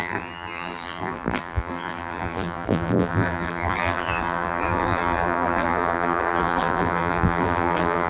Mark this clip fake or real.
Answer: fake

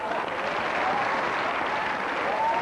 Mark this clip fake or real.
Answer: real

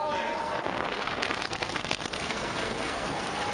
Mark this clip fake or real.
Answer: fake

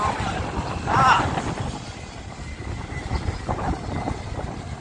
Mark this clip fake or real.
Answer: real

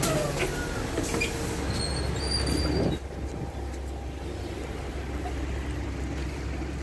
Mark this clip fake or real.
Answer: real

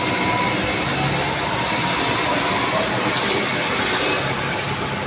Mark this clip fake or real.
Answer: real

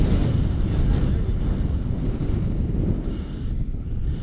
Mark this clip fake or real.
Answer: real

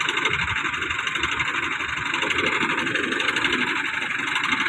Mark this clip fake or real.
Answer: real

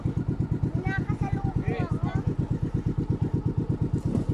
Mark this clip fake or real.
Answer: real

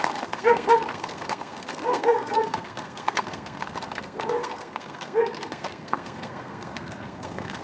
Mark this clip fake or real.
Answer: fake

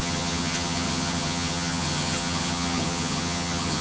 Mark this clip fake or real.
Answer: fake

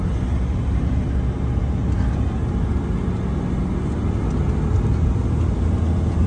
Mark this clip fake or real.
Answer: real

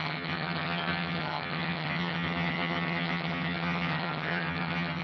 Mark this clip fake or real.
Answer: fake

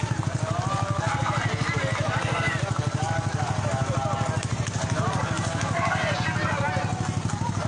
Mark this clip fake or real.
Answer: real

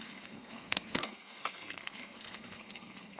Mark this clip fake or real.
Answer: fake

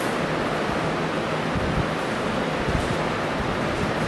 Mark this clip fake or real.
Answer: real